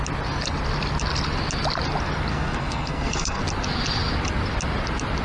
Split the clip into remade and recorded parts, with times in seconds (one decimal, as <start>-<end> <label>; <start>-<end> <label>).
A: 0.0-2.3 recorded; 2.3-3.4 remade; 3.4-5.2 recorded